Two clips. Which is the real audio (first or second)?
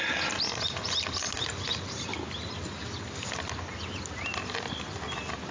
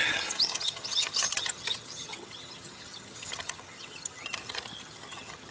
first